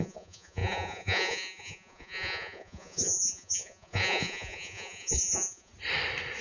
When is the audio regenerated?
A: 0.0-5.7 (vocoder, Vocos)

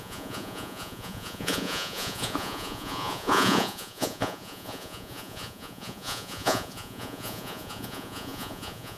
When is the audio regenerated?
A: 0.0-9.0 (vocoder, Vocos)

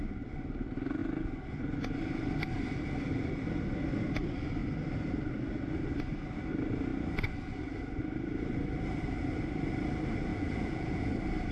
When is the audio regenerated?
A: 10.3-11.1 (vocoder, Vocos)

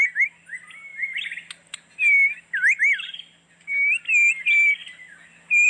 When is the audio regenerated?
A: none

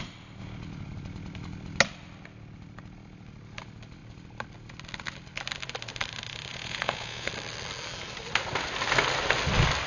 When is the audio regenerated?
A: 6.5-7.3 (vocoder, Vocos)

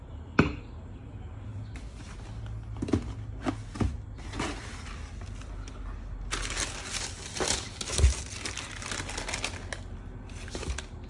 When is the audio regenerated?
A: none

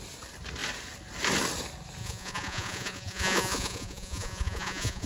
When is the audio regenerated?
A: 2.0-5.1 (vocoder, Vocos)